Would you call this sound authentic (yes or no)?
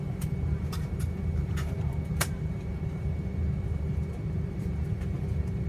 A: no